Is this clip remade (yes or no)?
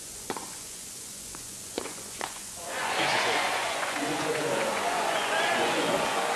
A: yes